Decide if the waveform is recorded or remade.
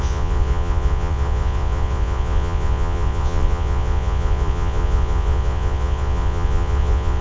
remade